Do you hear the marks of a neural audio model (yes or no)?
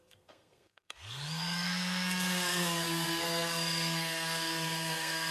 yes